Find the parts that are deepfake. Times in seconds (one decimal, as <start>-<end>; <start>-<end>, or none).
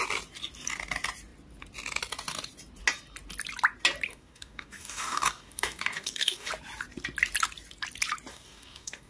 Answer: 4.1-6.5; 8.3-9.1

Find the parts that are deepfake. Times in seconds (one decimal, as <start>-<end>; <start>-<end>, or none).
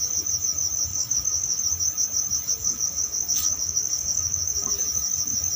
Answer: 0.9-1.6; 2.6-4.7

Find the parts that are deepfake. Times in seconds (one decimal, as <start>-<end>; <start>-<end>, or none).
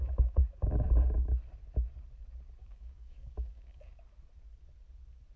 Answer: 0.4-0.9; 2.6-3.9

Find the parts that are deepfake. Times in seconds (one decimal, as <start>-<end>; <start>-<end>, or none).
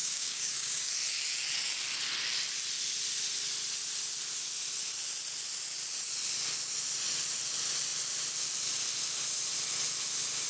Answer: 0.0-0.9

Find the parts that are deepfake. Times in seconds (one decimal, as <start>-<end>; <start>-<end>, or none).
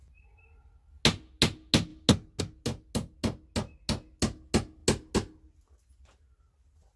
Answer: none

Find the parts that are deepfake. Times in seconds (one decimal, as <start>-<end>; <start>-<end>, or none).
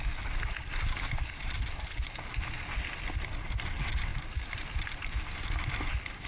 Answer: none